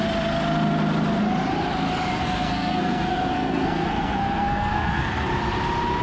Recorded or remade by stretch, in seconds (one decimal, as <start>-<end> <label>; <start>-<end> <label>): 0.0-2.1 recorded; 2.1-5.3 remade; 5.3-6.0 recorded

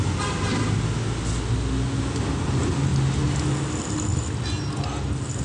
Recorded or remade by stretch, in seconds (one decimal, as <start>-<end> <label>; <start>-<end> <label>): 0.0-5.4 recorded

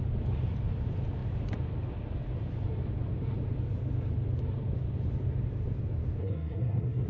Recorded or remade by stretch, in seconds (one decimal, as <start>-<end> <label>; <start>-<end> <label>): 0.0-6.2 recorded; 6.2-7.1 remade